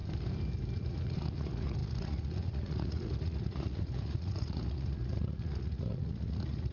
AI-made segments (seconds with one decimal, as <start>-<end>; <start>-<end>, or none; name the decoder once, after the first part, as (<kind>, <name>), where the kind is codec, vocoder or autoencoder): 0.8-6.7 (vocoder, Vocos)

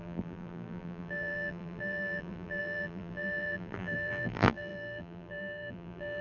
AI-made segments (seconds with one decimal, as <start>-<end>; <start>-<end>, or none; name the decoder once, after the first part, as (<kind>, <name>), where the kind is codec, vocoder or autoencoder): 0.0-6.2 (vocoder, BigVGAN v2)